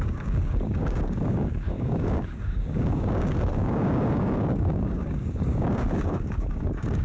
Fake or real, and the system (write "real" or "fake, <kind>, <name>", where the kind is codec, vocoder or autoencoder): fake, codec, DAC